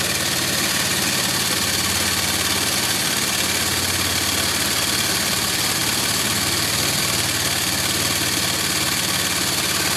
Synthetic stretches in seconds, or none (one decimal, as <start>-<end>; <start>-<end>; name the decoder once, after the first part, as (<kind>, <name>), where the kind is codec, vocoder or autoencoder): none